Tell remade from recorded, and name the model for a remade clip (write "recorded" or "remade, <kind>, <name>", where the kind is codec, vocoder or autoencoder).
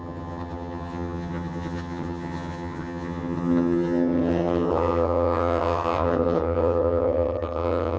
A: remade, vocoder, HiFi-GAN